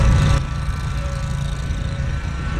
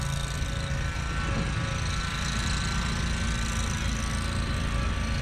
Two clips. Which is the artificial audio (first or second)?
first